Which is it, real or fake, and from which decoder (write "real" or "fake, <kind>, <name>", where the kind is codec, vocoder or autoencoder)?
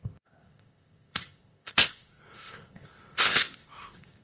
fake, codec, ZipCodec